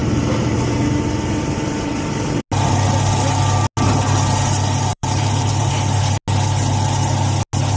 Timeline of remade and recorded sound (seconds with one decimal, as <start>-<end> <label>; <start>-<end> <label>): 0.0-2.4 remade; 2.4-4.9 recorded; 4.9-5.7 remade; 5.7-7.8 recorded